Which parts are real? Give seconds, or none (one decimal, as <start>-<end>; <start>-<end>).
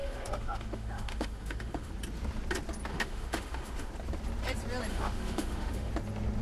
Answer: 1.9-2.9; 3.9-4.9; 5.9-6.4